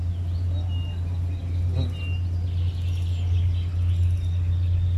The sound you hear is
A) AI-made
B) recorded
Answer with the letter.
B